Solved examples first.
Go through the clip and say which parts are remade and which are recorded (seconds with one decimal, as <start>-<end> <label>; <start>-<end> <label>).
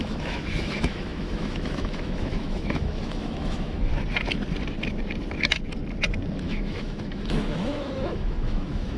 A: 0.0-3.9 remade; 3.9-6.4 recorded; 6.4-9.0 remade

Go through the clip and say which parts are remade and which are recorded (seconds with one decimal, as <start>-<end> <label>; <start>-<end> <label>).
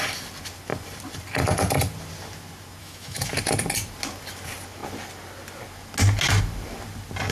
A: 0.0-2.8 recorded; 2.8-3.3 remade; 3.3-7.3 recorded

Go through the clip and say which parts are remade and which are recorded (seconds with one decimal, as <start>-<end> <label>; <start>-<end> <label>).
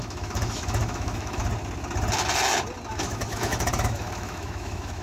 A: 0.0-1.4 remade; 1.4-2.9 recorded; 2.9-5.0 remade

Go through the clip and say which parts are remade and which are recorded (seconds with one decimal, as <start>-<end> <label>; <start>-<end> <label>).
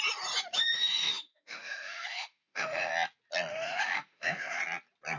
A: 0.0-0.4 recorded; 0.4-2.9 remade; 2.9-3.5 recorded; 3.5-4.6 remade; 4.6-5.2 recorded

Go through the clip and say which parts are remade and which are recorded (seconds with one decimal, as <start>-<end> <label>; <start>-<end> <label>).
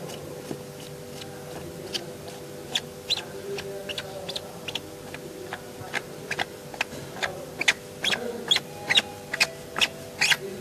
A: 0.0-10.6 recorded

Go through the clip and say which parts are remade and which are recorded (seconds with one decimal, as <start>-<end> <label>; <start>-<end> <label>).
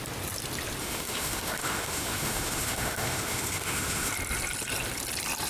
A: 0.0-0.8 recorded; 0.8-4.1 remade; 4.1-5.5 recorded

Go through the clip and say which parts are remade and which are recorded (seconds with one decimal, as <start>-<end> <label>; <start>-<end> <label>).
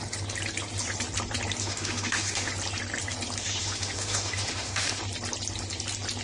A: 0.0-1.6 recorded; 1.6-2.5 remade; 2.5-3.4 recorded; 3.4-5.0 remade; 5.0-6.2 recorded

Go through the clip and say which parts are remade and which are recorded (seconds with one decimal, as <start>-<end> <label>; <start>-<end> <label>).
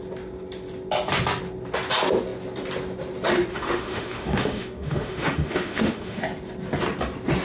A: 0.0-3.5 recorded; 3.5-6.2 remade; 6.2-7.4 recorded